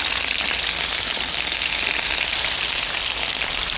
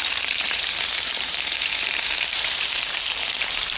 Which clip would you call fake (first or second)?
second